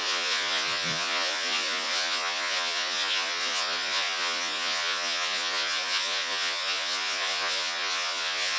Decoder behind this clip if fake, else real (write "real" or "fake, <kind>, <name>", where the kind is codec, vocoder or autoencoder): fake, vocoder, Vocos